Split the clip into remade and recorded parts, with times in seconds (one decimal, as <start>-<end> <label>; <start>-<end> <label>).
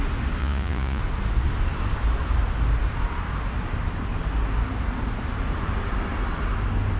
0.0-0.4 recorded; 0.4-1.0 remade; 1.0-7.0 recorded